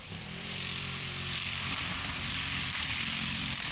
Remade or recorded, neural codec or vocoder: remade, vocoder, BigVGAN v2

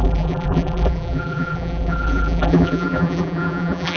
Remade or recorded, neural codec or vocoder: remade, vocoder, BigVGAN v2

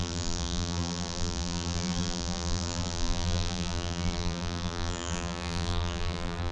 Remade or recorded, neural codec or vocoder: remade, vocoder, BigVGAN v2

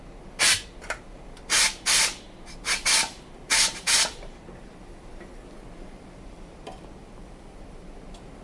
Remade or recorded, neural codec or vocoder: remade, vocoder, BigVGAN v2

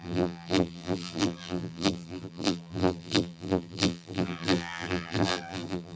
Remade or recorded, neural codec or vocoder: remade, vocoder, BigVGAN v2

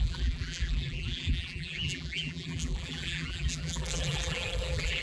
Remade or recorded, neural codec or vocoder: remade, vocoder, BigVGAN v2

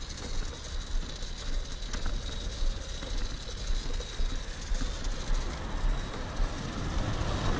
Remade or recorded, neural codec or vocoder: recorded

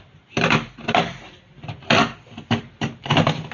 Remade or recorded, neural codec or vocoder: remade, vocoder, BigVGAN v2